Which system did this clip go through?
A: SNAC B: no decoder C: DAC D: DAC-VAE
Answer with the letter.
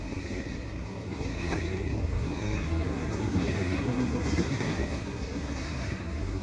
A